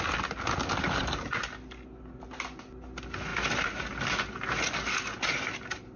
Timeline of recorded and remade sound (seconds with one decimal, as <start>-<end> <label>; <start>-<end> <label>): 0.0-6.0 recorded